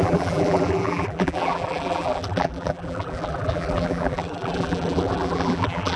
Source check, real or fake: fake